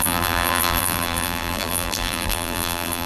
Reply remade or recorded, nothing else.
remade